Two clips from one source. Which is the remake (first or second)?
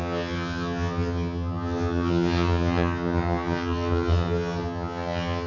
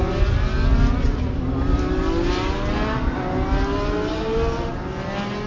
first